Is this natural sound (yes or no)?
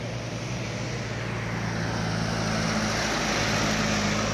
yes